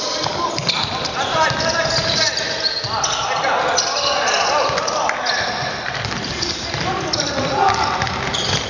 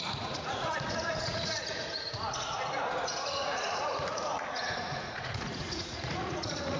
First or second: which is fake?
second